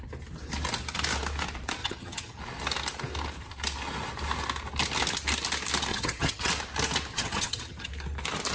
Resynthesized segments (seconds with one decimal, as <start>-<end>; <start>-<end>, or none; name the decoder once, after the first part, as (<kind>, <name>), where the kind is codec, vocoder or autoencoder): 1.8-2.4 (vocoder, HiFi-GAN); 5.9-6.5; 7.1-7.9